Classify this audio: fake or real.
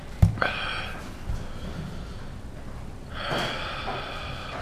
real